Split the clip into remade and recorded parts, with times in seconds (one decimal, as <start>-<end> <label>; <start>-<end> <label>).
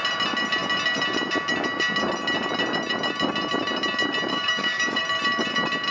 0.0-4.3 recorded; 4.3-5.0 remade; 5.0-5.9 recorded